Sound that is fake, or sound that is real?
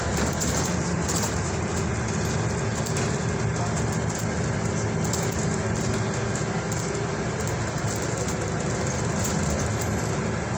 real